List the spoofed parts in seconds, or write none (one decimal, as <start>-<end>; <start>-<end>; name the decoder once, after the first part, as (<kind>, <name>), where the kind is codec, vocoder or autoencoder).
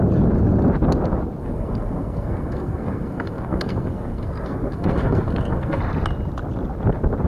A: 1.4-5.8 (codec, SNAC)